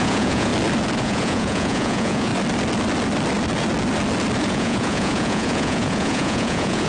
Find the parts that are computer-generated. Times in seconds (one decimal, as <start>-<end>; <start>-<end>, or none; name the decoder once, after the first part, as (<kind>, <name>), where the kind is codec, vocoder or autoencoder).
0.0-0.5 (vocoder, Vocos); 1.0-2.3; 4.5-6.9